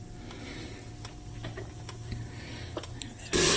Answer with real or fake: real